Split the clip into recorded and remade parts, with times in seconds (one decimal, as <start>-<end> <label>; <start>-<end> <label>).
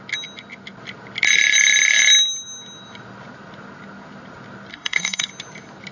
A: 0.0-4.7 recorded; 4.7-5.3 remade; 5.3-5.9 recorded